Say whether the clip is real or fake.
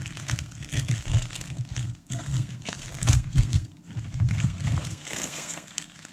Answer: fake